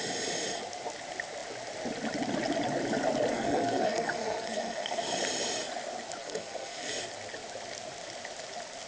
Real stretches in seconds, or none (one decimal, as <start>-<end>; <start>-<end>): 0.0-3.3; 5.0-6.2; 6.9-8.9